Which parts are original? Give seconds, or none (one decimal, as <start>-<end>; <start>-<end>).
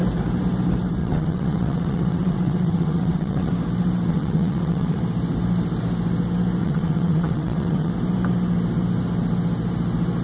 0.0-1.0; 3.5-4.1; 5.0-6.6; 7.9-10.2